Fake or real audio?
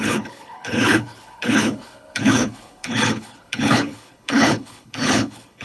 fake